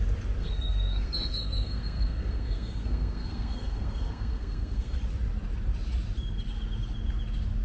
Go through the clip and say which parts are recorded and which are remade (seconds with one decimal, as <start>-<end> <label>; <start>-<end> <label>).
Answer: 0.0-0.4 recorded; 0.4-5.0 remade; 5.0-7.6 recorded